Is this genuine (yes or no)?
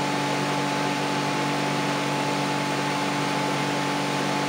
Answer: yes